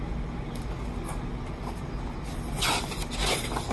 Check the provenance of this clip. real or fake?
real